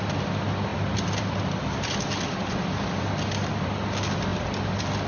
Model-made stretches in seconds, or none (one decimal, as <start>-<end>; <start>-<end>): none